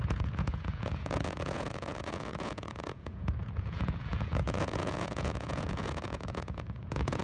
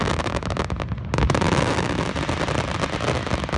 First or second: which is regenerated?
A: first